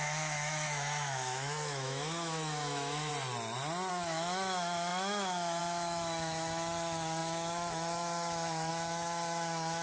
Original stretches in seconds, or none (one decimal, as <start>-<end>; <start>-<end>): 3.1-3.9